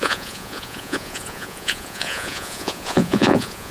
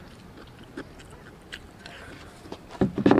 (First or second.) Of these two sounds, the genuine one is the second